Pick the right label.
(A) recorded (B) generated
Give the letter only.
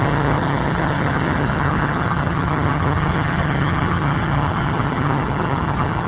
B